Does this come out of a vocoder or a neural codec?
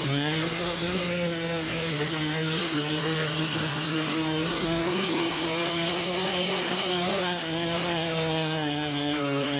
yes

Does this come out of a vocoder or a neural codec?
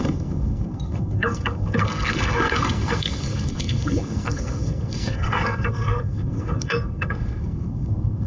yes